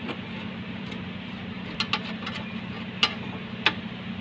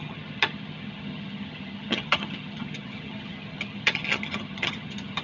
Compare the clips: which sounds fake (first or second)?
second